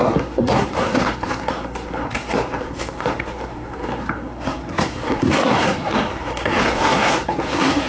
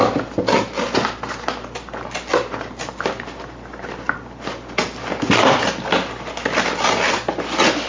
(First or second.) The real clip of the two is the second